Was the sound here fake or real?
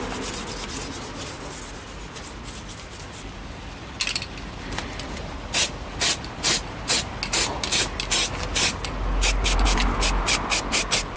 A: real